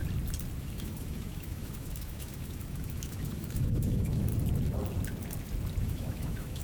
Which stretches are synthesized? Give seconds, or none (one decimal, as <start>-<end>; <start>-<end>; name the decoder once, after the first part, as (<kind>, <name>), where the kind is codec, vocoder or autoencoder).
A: 0.6-4.3 (autoencoder, DAC-VAE); 5.8-6.6